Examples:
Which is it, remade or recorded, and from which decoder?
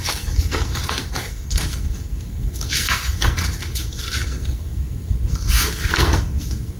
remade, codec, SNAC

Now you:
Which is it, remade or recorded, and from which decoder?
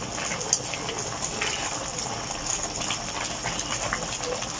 recorded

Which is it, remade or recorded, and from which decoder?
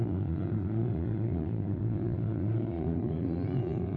remade, vocoder, Vocos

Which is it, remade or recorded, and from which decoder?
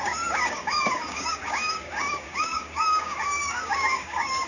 remade, codec, DAC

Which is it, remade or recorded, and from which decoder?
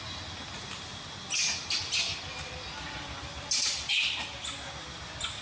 recorded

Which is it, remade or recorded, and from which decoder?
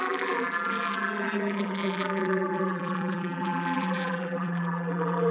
remade, vocoder, BigVGAN v2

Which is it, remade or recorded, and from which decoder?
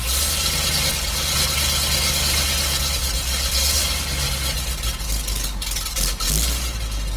recorded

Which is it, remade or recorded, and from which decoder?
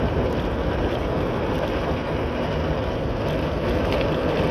recorded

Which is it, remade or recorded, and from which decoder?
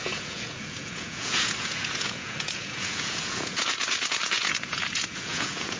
remade, vocoder, Vocos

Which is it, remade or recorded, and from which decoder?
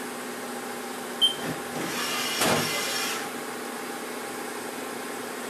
recorded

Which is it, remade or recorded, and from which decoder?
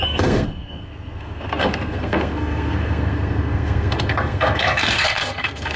remade, codec, SNAC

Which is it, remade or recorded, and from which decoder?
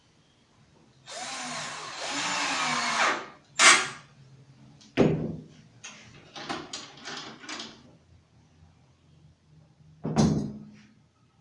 recorded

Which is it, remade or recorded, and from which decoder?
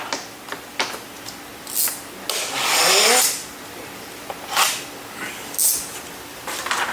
recorded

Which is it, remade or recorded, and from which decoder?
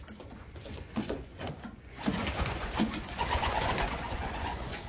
remade, vocoder, Vocos